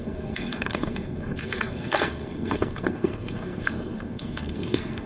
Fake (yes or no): yes